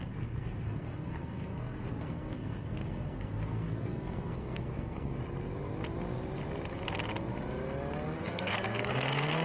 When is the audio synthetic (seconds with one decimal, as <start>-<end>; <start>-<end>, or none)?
0.0-5.2; 8.2-9.4